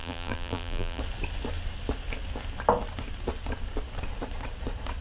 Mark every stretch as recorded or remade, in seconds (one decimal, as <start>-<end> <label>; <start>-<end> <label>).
0.0-1.0 remade; 1.0-5.0 recorded